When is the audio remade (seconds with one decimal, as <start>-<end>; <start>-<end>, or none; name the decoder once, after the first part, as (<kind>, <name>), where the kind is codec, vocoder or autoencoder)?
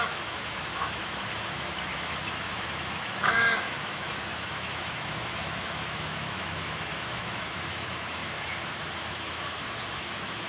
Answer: 0.0-10.5 (autoencoder, DAC-VAE)